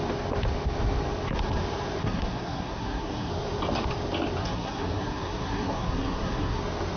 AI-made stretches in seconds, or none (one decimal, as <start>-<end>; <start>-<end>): 2.0-3.3; 4.4-6.6